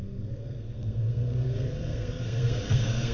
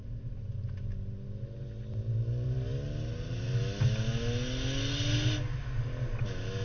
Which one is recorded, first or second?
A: second